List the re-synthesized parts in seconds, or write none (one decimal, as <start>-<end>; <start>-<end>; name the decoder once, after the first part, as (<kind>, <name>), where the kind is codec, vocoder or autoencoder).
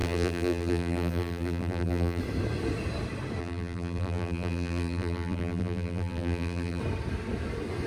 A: 0.0-2.2 (vocoder, BigVGAN v2); 3.4-6.8